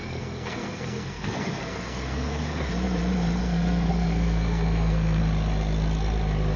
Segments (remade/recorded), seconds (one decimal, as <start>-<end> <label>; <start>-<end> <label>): 0.0-2.7 remade; 2.7-3.4 recorded; 3.4-5.2 remade; 5.2-6.6 recorded